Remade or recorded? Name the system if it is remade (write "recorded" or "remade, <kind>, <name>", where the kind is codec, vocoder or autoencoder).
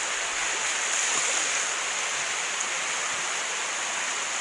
recorded